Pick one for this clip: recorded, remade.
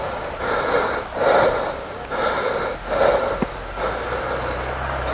recorded